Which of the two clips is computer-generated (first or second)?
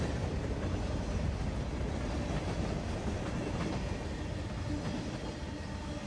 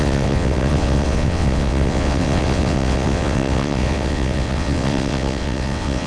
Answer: second